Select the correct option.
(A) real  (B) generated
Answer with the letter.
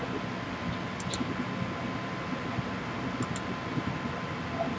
A